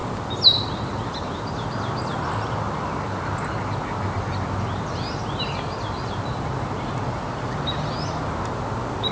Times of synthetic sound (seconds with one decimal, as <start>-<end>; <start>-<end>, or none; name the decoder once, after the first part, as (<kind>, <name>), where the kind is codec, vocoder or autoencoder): none